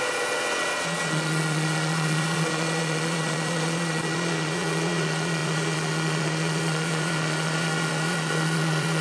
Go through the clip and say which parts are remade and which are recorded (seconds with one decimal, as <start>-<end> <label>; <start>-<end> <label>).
0.0-9.0 remade